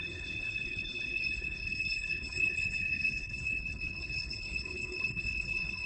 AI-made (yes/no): yes